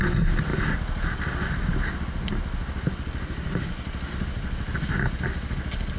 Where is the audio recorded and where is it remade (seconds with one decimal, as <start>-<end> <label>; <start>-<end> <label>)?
0.0-6.0 recorded